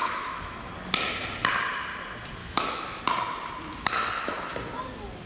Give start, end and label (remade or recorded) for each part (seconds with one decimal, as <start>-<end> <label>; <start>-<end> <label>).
0.0-0.7 remade; 0.7-2.4 recorded; 2.4-3.0 remade; 3.0-5.3 recorded